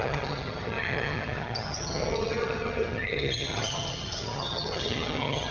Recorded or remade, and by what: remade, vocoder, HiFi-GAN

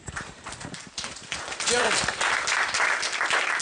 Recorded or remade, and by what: remade, vocoder, BigVGAN v2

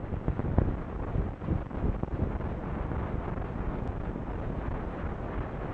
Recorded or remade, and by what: recorded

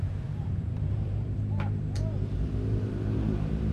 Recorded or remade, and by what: remade, vocoder, BigVGAN v2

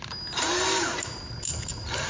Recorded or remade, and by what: remade, vocoder, BigVGAN v2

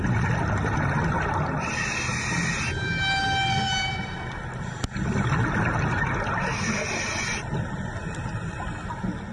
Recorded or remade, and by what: recorded